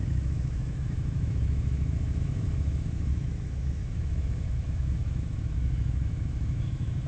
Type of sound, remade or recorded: remade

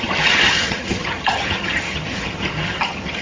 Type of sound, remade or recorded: remade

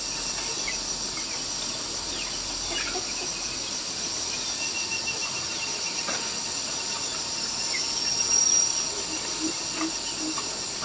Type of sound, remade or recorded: recorded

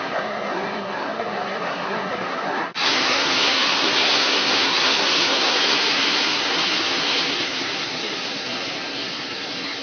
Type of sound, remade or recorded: remade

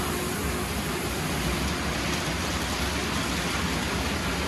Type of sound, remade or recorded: recorded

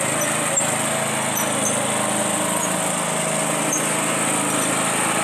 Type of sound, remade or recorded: recorded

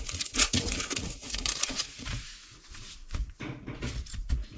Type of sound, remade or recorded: remade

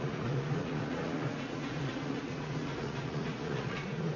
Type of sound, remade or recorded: remade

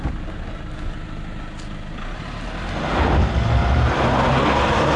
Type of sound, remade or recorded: recorded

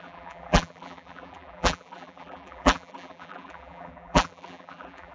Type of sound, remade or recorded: remade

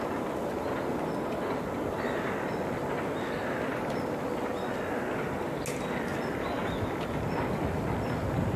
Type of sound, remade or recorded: recorded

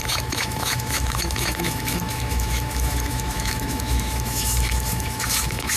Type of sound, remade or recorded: remade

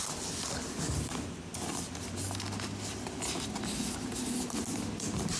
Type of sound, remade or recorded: recorded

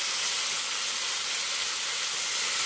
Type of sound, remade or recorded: recorded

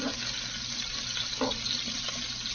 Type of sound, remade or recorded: recorded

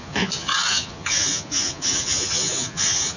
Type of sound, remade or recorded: remade